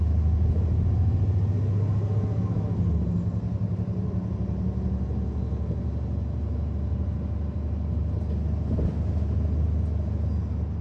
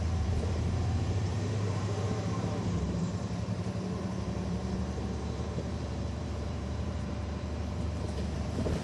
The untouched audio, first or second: first